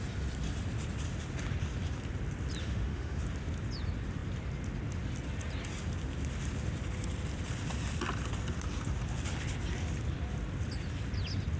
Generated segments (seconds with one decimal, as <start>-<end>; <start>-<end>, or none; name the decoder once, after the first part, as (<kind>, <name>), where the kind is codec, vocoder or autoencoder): 2.6-3.2 (autoencoder, DAC-VAE)